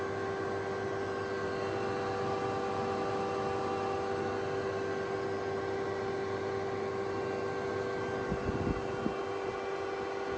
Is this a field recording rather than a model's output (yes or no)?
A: yes